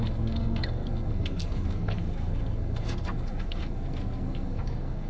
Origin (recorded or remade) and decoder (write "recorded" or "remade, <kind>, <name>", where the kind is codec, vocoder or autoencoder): remade, codec, SNAC